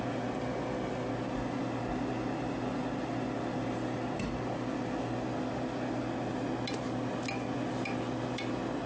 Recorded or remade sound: recorded